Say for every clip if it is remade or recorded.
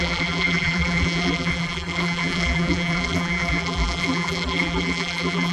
remade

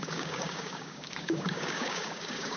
remade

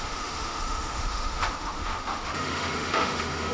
remade